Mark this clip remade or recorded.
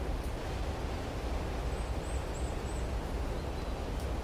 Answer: recorded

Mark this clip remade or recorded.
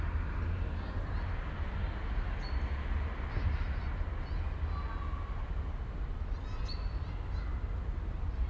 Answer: recorded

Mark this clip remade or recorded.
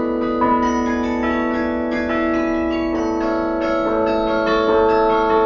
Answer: recorded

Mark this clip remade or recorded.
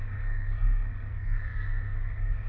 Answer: remade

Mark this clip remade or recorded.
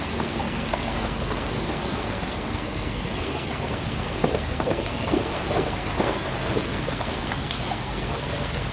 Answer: remade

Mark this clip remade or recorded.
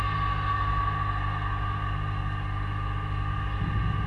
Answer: recorded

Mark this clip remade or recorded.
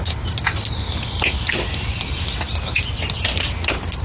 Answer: recorded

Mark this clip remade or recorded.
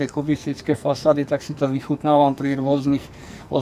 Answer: remade